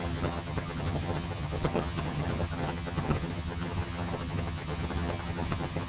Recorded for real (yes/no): no